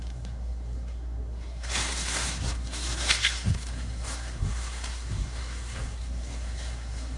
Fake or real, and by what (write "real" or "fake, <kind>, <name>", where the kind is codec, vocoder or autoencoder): fake, codec, SNAC